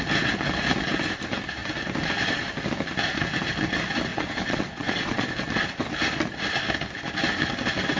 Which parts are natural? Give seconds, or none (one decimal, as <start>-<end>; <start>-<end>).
0.0-4.1; 5.2-8.0